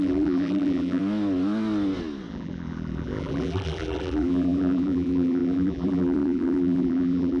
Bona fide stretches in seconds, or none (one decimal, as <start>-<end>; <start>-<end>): 1.0-2.3

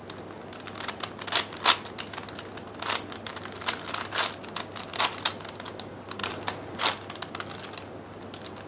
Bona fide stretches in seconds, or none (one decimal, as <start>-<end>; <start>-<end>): 0.0-6.2; 6.8-8.7

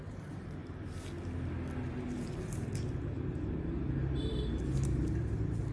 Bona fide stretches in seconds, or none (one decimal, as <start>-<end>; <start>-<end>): 0.6-3.2

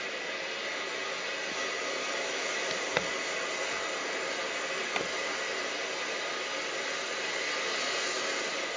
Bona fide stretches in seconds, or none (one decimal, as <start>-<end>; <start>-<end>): 0.0-8.8

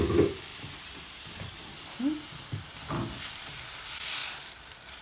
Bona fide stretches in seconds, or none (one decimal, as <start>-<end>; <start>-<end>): 0.5-3.2; 4.2-5.0